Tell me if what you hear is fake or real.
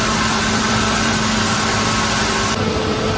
fake